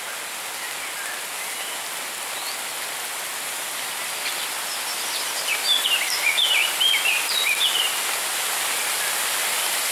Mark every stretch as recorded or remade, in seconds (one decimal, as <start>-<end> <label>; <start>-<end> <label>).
0.0-9.9 recorded